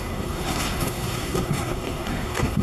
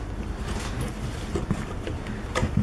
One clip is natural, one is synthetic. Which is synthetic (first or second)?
first